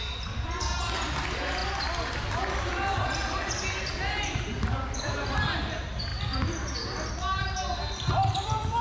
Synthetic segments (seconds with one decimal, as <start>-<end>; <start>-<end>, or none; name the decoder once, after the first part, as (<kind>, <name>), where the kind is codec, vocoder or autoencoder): none